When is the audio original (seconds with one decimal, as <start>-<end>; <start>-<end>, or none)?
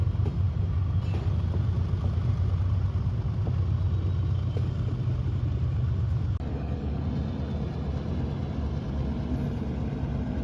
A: 0.0-6.5; 7.0-10.4